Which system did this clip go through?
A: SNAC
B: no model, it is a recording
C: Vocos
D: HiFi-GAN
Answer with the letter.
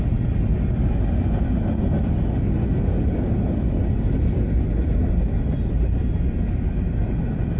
B